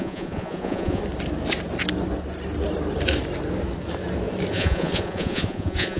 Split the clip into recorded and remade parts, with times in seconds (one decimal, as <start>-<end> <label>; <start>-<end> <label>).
0.0-1.0 remade; 1.0-4.5 recorded; 4.5-6.0 remade